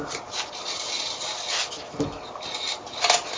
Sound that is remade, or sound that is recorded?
recorded